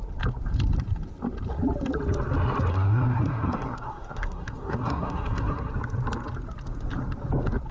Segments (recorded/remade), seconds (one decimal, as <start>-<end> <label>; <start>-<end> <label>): 0.0-2.7 recorded; 2.7-5.7 remade; 5.7-7.7 recorded